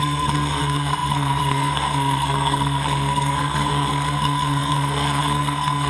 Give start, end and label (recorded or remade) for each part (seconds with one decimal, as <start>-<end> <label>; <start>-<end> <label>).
0.0-5.9 remade